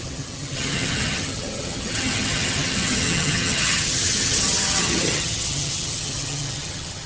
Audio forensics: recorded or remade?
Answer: remade